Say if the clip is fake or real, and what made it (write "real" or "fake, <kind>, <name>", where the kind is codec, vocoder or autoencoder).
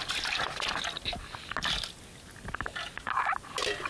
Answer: real